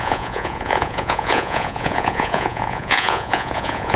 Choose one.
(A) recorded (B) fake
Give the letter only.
B